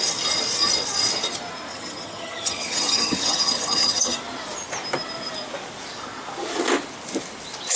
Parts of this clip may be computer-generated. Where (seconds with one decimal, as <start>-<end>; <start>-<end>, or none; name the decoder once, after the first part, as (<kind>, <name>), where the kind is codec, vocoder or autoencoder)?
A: 1.7-4.2 (vocoder, HiFi-GAN)